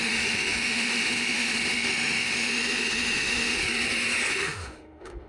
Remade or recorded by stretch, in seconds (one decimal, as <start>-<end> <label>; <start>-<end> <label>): 0.0-3.6 remade; 3.6-4.3 recorded; 4.3-5.3 remade